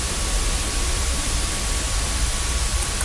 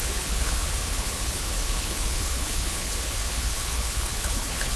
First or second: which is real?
first